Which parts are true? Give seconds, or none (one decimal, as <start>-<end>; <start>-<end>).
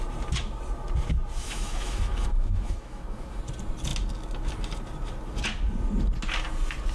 0.0-1.4; 3.4-6.9